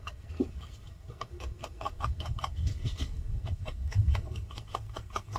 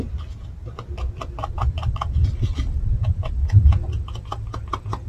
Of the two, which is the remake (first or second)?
first